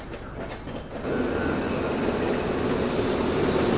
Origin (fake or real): real